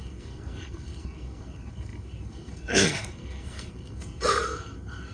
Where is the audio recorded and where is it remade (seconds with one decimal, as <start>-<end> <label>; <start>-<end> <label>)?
0.0-5.1 remade